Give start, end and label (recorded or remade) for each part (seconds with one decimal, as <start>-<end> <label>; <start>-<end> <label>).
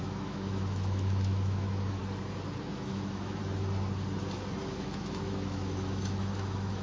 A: 0.0-2.0 remade; 2.0-2.6 recorded; 2.6-3.4 remade; 3.4-4.6 recorded; 4.6-6.8 remade